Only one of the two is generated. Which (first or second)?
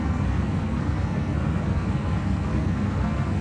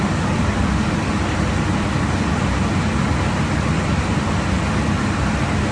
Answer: first